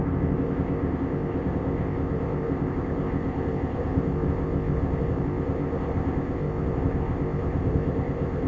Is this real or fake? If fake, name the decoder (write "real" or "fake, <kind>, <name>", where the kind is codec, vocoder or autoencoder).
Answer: fake, codec, ZipCodec